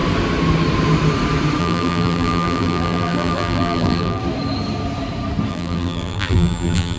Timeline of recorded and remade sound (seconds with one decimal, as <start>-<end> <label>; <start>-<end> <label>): 0.0-1.6 recorded; 1.6-4.2 remade; 4.2-5.5 recorded; 5.5-7.0 remade